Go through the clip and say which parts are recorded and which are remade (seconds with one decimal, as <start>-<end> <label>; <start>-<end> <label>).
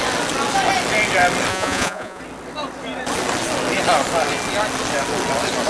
0.0-1.5 recorded; 1.5-2.2 remade; 2.2-5.7 recorded